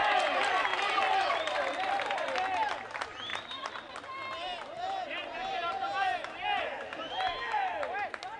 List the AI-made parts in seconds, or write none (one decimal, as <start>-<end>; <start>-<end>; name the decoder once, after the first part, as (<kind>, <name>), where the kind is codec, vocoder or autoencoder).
none